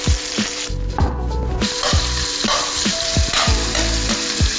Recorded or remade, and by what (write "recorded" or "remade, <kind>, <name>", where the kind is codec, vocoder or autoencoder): remade, vocoder, BigVGAN v2